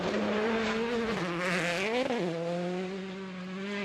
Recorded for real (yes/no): yes